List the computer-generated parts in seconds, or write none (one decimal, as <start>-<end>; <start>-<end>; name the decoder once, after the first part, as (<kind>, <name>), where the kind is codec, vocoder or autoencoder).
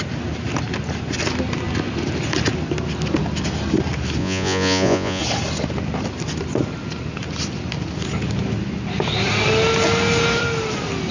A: 4.2-5.2 (vocoder, Vocos)